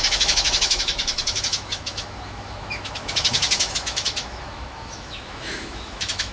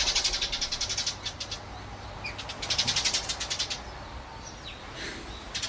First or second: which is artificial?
first